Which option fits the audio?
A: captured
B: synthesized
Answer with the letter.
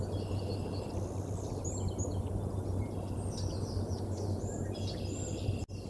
A